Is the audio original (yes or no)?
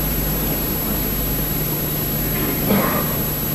yes